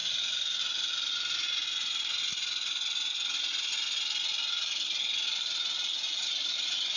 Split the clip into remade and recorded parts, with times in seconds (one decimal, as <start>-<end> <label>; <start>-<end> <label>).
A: 0.0-1.6 remade; 1.6-5.3 recorded; 5.3-7.0 remade